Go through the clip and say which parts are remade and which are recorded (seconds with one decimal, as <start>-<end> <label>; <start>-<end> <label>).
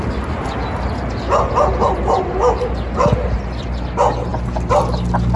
0.0-5.4 recorded